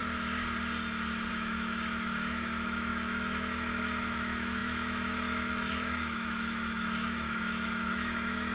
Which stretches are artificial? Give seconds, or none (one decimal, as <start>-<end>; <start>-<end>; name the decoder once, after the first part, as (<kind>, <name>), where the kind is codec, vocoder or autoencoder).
1.3-8.5 (autoencoder, DAC-VAE)